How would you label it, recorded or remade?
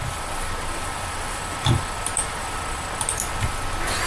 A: recorded